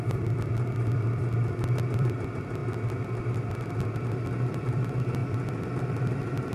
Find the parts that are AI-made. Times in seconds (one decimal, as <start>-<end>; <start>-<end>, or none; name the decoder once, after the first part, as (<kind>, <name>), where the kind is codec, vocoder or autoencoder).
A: 0.0-2.6 (vocoder, BigVGAN v2); 4.5-5.2; 5.8-6.5